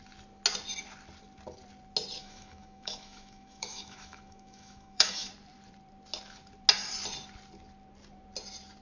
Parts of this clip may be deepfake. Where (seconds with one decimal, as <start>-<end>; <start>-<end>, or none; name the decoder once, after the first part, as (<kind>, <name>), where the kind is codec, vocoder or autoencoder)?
2.2-5.3 (autoencoder, DAC-VAE)